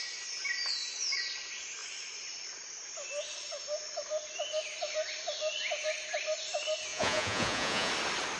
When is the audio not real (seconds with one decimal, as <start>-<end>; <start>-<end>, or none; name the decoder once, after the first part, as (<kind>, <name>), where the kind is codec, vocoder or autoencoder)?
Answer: 6.9-7.9 (vocoder, Vocos)